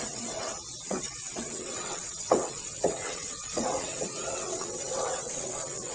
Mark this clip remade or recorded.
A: remade